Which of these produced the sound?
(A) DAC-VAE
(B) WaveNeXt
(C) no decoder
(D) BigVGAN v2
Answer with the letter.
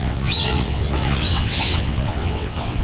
B